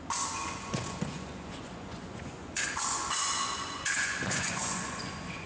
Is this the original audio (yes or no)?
no